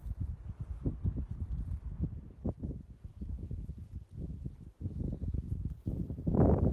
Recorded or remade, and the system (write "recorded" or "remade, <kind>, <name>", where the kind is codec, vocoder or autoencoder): recorded